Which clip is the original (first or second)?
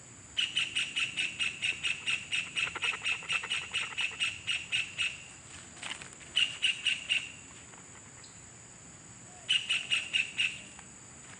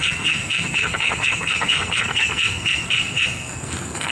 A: first